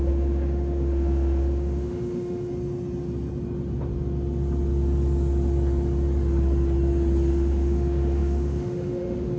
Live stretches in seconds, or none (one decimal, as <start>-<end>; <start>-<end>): 2.5-7.3